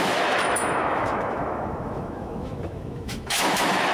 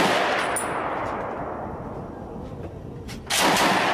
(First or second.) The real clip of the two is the second